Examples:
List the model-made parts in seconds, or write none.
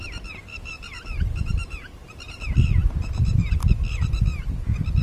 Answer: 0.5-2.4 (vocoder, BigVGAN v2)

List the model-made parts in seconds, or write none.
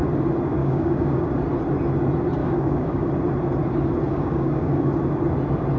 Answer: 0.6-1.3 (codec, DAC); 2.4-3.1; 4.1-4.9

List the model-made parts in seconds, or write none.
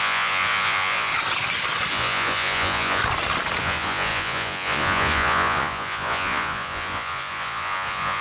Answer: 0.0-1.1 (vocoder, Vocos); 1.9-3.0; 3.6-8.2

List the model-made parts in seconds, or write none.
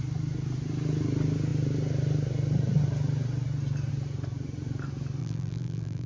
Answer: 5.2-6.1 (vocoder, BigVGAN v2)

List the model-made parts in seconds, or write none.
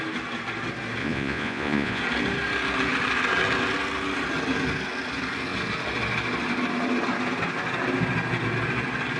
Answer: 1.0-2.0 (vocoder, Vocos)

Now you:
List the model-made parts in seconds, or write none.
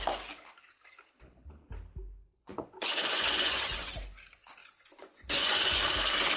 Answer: 2.3-3.9 (vocoder, Vocos); 4.6-5.8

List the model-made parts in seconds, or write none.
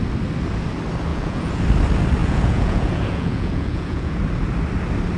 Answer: 1.1-1.6 (vocoder, Vocos); 2.2-4.2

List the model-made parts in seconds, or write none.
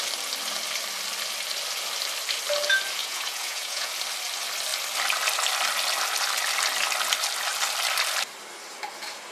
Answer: 3.0-3.9 (vocoder, Vocos)